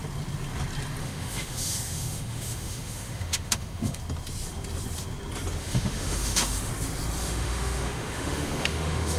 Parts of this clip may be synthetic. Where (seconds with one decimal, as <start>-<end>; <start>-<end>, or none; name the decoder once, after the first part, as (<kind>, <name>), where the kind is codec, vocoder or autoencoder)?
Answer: 1.0-4.0 (autoencoder, DAC-VAE); 5.6-6.7; 7.2-9.2